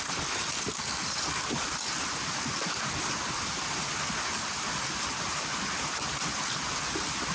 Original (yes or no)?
yes